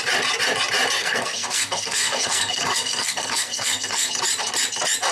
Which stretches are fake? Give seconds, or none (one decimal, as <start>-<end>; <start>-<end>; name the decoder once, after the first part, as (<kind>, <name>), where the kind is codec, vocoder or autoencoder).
1.0-4.1 (codec, SNAC)